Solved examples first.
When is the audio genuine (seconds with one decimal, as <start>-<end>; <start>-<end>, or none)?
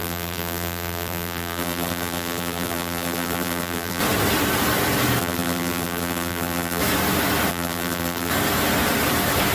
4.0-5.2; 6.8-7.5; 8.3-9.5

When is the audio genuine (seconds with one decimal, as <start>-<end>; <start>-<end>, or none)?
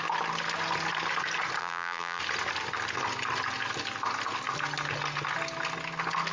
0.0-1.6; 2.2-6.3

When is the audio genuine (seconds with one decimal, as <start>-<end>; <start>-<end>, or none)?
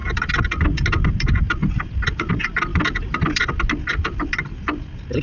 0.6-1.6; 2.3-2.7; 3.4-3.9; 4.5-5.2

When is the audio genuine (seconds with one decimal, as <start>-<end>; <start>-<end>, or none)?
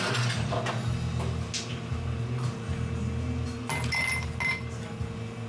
0.0-1.7; 2.6-5.5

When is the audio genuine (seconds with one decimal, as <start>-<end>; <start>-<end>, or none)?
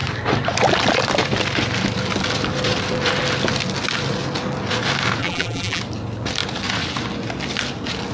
0.0-5.2; 5.8-8.1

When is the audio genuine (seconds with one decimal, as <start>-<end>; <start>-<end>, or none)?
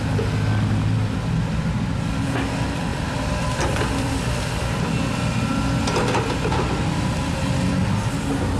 0.0-2.9; 4.4-5.5; 6.0-8.6